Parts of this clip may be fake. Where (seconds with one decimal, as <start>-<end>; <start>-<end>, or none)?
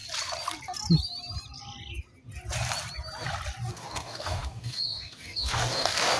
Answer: 3.7-6.2